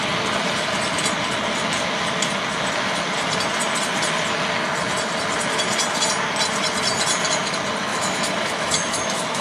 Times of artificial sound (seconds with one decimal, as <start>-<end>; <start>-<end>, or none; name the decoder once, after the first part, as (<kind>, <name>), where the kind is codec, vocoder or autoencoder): 7.9-9.4 (autoencoder, DAC-VAE)